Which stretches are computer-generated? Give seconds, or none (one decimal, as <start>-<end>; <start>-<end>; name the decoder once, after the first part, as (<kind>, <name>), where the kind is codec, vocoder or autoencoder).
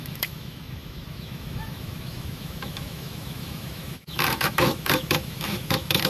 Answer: 0.0-6.1 (autoencoder, DAC-VAE)